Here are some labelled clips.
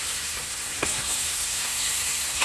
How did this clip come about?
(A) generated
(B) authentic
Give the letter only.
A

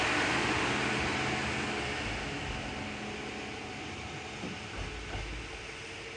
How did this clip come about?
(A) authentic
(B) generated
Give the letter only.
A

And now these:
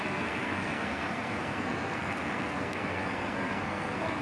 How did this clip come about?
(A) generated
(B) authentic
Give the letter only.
A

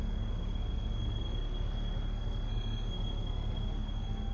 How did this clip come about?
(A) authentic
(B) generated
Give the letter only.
B